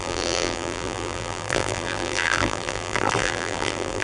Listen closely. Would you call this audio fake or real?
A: fake